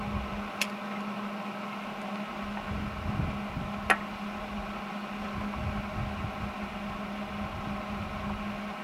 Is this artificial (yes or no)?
no